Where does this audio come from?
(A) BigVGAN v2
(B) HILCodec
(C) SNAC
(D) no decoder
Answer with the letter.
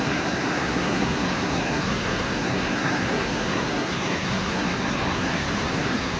C